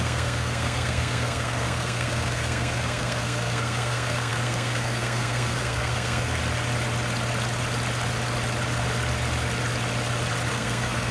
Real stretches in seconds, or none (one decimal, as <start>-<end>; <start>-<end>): 6.4-10.5

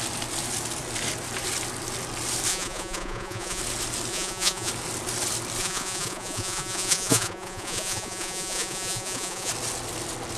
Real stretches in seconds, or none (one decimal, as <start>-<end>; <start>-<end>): 0.0-2.5; 3.6-4.1; 4.7-5.6; 9.5-10.4

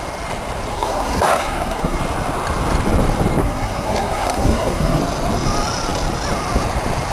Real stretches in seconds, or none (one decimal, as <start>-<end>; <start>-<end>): 0.0-0.7; 2.0-3.4; 5.0-7.1